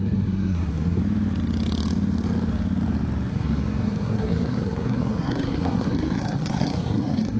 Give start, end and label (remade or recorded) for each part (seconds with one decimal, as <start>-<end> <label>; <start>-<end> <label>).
0.0-1.0 remade; 1.0-3.3 recorded; 3.3-7.4 remade